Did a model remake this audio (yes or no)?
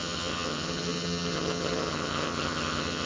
yes